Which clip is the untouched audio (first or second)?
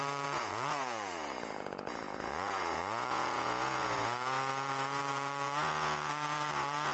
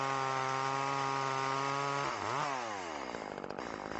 second